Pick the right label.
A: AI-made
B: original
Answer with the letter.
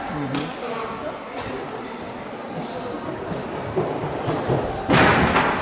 B